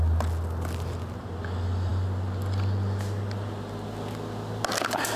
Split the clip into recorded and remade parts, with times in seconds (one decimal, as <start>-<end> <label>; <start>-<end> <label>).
0.0-5.2 recorded